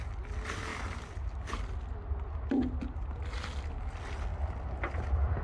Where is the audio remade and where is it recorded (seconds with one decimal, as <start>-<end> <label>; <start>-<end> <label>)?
0.0-5.4 recorded